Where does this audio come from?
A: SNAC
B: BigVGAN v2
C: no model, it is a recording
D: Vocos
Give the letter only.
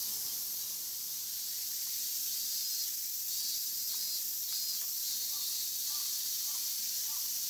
C